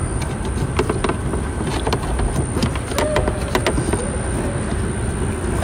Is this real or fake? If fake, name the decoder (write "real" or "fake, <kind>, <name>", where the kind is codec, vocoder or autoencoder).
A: real